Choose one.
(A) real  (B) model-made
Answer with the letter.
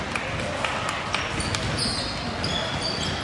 A